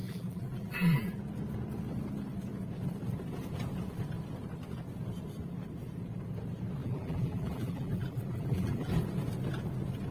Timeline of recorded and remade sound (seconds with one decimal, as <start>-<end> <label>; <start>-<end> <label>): 0.0-1.2 remade; 1.2-6.8 recorded; 6.8-8.9 remade; 8.9-10.1 recorded